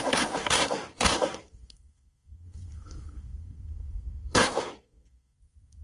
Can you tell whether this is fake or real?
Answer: fake